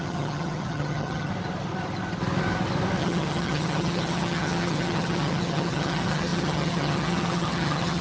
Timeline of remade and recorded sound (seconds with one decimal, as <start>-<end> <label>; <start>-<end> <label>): 0.0-1.3 remade; 1.3-3.0 recorded; 3.0-8.0 remade